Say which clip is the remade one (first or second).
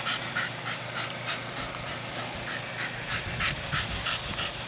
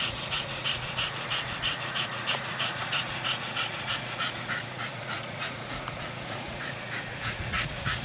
second